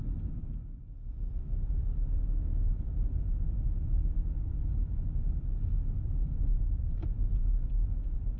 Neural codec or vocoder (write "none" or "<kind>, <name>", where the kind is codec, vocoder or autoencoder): none